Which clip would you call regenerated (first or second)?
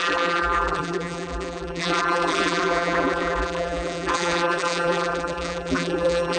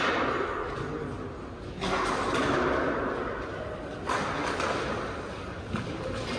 first